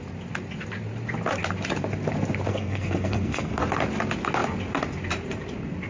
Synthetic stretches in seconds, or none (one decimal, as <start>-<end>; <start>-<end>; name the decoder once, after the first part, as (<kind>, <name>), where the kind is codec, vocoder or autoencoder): 2.5-3.6 (codec, SNAC)